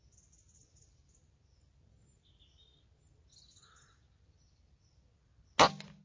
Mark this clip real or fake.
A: real